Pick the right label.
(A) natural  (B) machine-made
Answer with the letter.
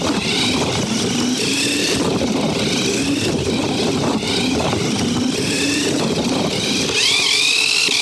A